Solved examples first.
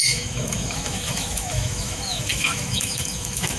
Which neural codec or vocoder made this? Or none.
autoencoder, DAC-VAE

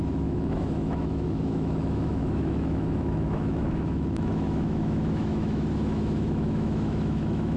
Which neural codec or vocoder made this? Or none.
autoencoder, DAC-VAE